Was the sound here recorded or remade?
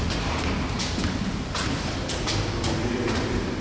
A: recorded